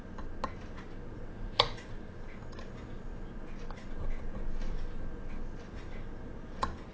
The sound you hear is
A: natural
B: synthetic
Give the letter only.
A